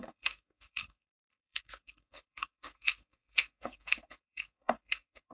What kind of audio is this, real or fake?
fake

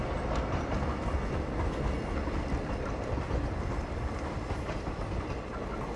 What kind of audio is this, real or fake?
real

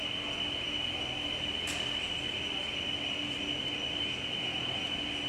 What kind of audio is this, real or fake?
real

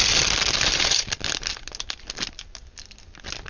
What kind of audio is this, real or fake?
real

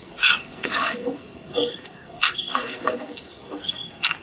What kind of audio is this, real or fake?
fake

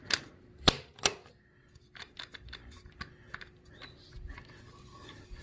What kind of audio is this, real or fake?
real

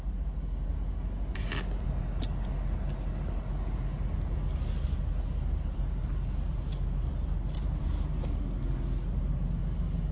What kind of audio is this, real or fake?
real